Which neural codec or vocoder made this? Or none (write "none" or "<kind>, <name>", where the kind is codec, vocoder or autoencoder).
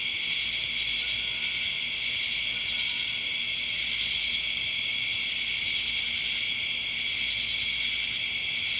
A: none